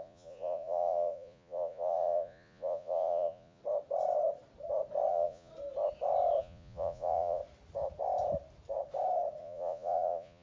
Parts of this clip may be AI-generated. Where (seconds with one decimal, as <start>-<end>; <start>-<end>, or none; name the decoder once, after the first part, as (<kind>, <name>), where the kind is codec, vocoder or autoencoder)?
0.0-3.6 (vocoder, Vocos); 5.1-5.5; 6.4-7.4; 9.4-10.4